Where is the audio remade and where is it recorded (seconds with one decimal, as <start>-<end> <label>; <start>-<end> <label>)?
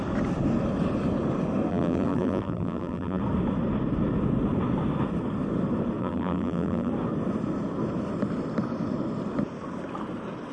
0.0-1.7 recorded; 1.7-3.2 remade; 3.2-6.0 recorded; 6.0-6.9 remade; 6.9-10.5 recorded